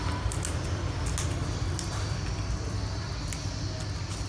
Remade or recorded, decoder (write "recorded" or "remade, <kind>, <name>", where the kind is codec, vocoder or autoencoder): recorded